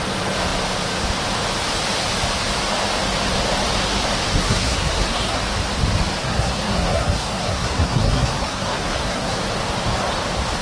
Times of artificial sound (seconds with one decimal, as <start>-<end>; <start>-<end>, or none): 4.4-5.4; 6.2-9.4